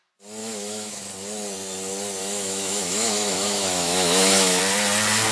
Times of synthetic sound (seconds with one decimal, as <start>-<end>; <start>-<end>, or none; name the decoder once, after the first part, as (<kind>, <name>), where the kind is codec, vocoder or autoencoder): 0.4-1.0 (autoencoder, DAC-VAE); 2.2-4.6